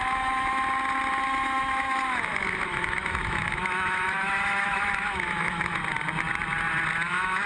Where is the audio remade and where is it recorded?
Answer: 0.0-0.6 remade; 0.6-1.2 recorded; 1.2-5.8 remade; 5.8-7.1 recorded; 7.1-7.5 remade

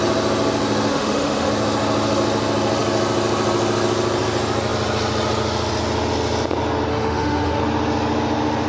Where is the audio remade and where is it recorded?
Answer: 0.0-0.9 recorded; 0.9-1.5 remade; 1.5-6.9 recorded; 6.9-7.6 remade; 7.6-8.7 recorded